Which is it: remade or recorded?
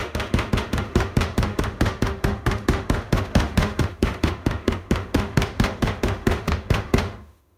remade